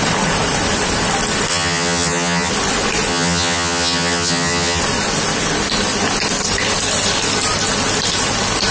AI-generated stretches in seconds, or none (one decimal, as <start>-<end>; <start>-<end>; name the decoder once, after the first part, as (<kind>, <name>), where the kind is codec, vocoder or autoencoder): 1.5-2.5 (vocoder, HiFi-GAN); 3.1-4.8

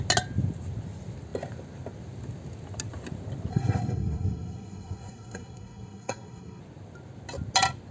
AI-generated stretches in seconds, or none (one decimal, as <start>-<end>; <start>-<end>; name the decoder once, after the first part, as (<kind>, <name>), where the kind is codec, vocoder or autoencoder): 3.5-6.6 (codec, SNAC)

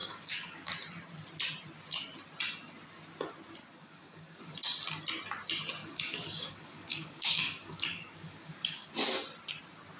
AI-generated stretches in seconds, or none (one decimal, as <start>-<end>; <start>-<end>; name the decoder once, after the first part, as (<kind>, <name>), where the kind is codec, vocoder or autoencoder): 0.0-0.7 (codec, DAC); 3.6-4.4; 5.8-8.9

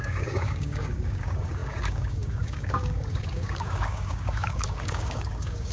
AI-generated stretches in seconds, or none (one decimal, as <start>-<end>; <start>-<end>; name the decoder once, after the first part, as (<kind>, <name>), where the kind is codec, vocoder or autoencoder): 0.0-5.7 (codec, DAC)

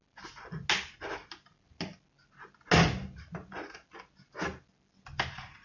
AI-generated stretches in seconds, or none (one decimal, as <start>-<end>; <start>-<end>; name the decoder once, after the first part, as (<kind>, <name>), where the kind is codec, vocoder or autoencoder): none

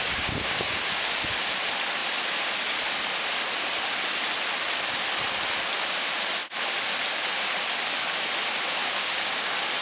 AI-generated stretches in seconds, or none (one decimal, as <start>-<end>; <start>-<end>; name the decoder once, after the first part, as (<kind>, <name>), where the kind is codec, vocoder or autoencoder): 0.0-0.8 (codec, DAC); 8.8-9.8